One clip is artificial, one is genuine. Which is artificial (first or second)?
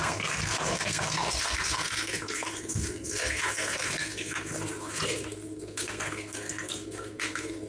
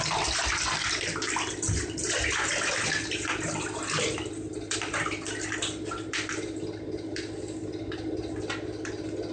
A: first